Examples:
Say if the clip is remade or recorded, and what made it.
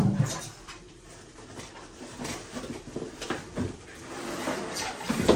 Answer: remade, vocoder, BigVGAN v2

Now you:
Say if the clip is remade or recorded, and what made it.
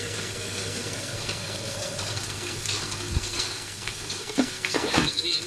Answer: remade, codec, SNAC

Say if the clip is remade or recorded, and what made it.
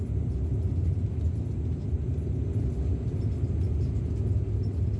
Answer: recorded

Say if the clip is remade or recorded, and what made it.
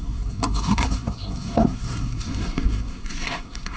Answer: remade, codec, SNAC